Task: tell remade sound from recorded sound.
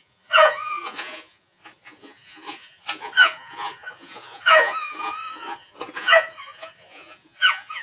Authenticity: remade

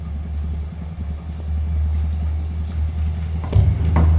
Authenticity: recorded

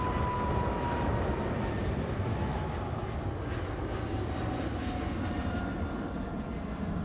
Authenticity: recorded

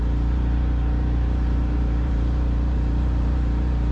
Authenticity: remade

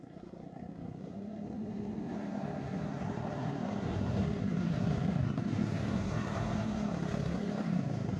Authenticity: remade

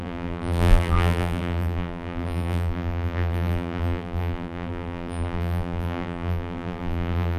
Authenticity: remade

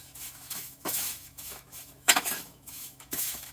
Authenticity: remade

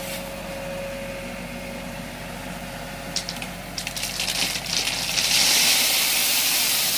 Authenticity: recorded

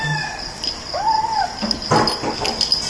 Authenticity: recorded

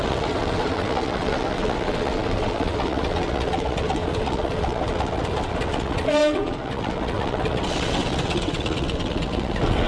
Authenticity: remade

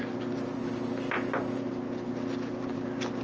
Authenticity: recorded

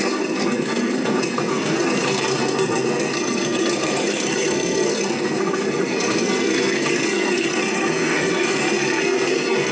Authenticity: remade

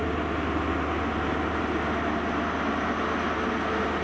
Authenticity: recorded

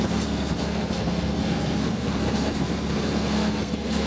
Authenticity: remade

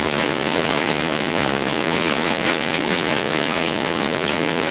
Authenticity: remade